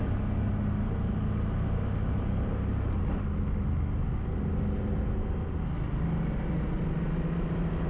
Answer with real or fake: real